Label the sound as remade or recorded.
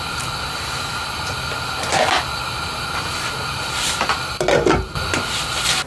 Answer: recorded